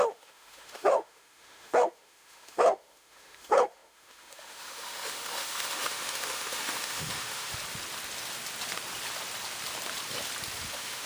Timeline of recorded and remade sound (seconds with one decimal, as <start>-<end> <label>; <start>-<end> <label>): 0.0-7.5 remade; 7.5-10.7 recorded; 10.7-11.1 remade